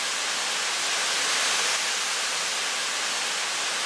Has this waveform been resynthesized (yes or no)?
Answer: no